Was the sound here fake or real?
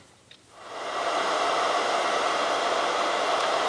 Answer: fake